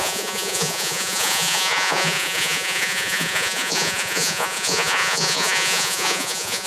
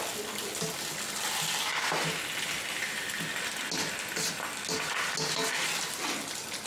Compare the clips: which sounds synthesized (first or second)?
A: first